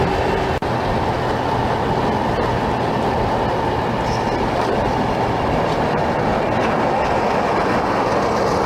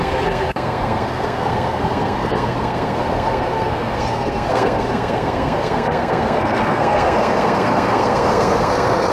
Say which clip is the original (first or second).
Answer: first